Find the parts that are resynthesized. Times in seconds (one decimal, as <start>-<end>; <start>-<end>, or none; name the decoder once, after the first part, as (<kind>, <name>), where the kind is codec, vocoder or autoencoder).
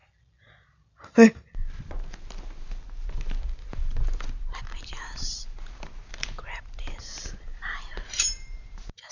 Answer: 4.6-7.0 (vocoder, BigVGAN v2); 7.8-9.1